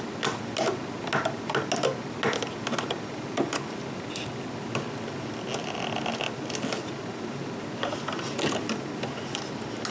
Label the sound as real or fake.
real